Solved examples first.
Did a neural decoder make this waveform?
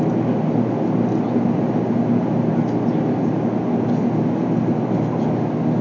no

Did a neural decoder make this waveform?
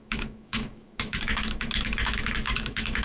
yes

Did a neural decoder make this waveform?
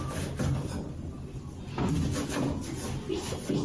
no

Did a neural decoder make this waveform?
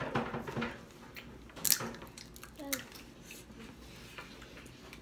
no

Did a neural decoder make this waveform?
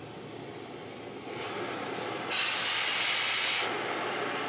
no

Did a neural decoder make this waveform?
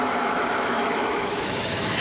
yes